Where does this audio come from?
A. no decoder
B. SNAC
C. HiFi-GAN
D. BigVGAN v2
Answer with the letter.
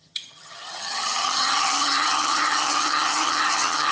C